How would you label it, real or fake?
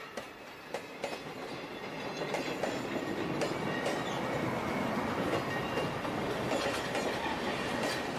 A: real